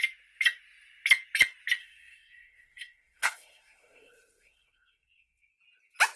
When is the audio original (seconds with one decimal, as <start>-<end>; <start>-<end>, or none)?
0.0-1.8; 5.5-6.2